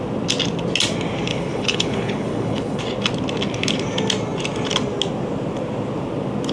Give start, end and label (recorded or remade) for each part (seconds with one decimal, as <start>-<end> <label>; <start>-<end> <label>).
0.0-1.3 recorded; 1.3-2.8 remade; 2.8-6.5 recorded